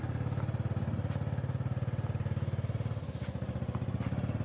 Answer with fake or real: real